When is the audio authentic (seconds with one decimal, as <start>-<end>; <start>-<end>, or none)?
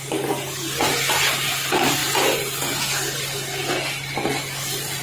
0.0-5.0